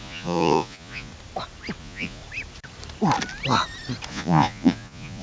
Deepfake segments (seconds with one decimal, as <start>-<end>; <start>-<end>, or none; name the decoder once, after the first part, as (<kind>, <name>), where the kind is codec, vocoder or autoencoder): 0.0-1.1 (vocoder, Vocos); 1.8-2.2; 4.1-5.2